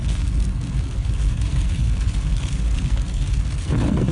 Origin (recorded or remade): remade